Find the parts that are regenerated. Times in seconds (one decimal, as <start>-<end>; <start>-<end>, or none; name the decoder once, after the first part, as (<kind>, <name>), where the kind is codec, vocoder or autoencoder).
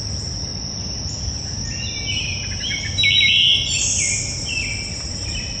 none